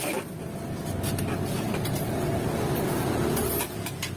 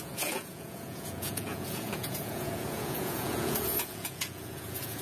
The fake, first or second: second